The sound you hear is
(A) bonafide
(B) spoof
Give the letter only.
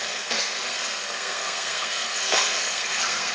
B